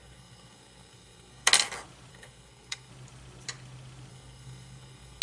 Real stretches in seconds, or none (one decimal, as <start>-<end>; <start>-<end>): 1.5-2.1; 2.9-4.1